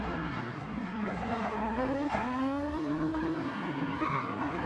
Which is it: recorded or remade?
remade